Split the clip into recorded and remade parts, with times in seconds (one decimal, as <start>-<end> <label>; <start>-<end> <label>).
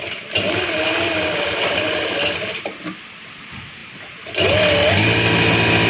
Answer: 0.0-5.9 recorded